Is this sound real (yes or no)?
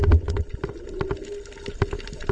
yes